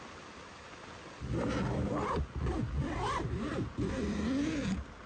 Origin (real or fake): real